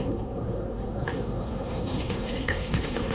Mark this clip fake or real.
fake